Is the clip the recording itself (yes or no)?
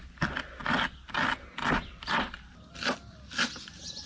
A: yes